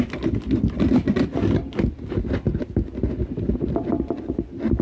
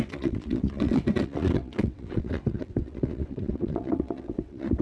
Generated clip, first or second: second